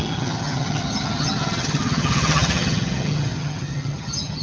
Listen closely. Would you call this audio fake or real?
fake